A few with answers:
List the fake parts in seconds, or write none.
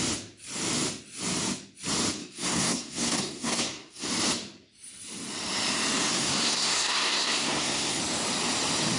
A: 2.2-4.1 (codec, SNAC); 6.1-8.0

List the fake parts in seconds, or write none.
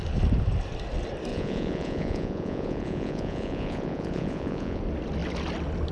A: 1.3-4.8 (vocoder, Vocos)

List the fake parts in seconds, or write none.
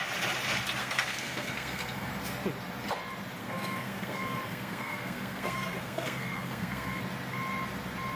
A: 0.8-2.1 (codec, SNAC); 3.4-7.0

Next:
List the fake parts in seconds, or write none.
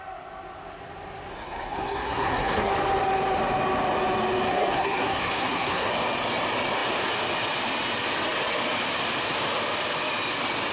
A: 1.3-2.7 (codec, SNAC); 4.5-5.9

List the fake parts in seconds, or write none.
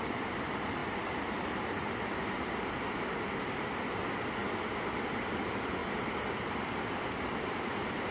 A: 0.0-0.8 (vocoder, BigVGAN v2); 1.6-4.4; 5.1-8.1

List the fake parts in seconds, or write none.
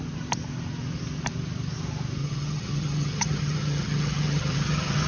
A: 2.2-5.1 (vocoder, HiFi-GAN)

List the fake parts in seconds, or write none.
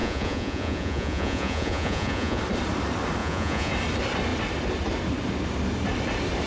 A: 0.0-2.4 (vocoder, Vocos); 3.2-3.7